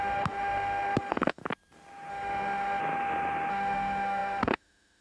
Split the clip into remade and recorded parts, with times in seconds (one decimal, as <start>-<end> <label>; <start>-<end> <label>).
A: 0.0-1.4 remade; 1.4-2.1 recorded; 2.1-2.8 remade; 2.8-3.5 recorded; 3.5-5.0 remade